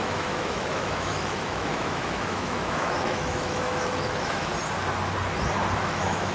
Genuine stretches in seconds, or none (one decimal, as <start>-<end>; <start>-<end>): 4.5-5.8